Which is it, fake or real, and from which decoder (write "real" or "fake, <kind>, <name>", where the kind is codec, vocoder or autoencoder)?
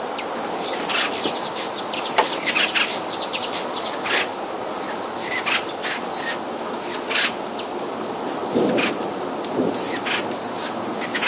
real